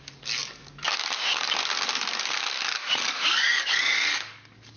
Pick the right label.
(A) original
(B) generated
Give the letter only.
B